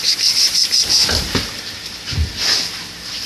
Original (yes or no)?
yes